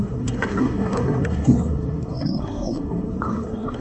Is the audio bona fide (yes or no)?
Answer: no